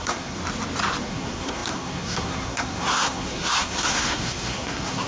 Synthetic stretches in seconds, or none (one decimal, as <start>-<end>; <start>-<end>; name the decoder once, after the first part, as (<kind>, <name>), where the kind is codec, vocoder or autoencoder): 0.0-0.4 (codec, SNAC); 1.0-5.1